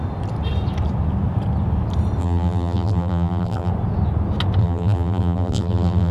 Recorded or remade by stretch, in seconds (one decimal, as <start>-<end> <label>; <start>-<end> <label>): 0.0-2.2 recorded; 2.2-3.7 remade; 3.7-4.6 recorded; 4.6-6.1 remade